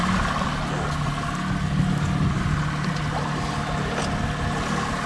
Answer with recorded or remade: recorded